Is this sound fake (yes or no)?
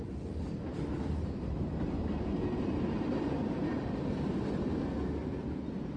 no